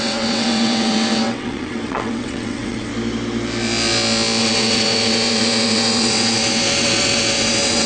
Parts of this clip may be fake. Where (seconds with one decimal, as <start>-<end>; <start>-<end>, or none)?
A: 0.0-2.9; 4.4-7.9